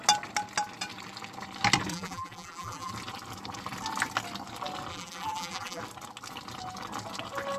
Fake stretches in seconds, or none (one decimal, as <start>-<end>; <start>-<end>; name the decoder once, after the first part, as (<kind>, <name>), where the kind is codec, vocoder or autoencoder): 1.9-2.9 (vocoder, BigVGAN v2); 4.9-5.8